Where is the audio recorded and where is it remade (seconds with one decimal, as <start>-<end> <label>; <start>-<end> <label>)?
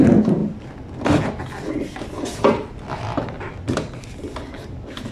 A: 0.0-5.1 recorded